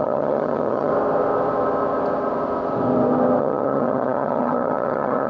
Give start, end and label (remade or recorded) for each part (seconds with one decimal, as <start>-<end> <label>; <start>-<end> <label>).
0.0-0.9 remade; 0.9-3.4 recorded; 3.4-5.3 remade